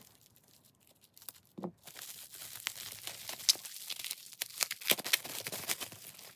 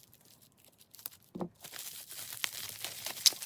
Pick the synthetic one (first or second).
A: second